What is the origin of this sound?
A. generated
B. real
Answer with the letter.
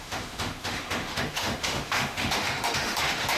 A